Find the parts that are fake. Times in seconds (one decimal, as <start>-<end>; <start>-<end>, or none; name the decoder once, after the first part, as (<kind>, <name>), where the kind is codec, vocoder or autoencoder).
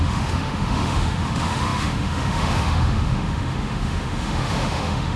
0.0-5.2 (autoencoder, DAC-VAE)